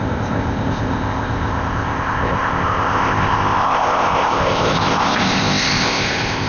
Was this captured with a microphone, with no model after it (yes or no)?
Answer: no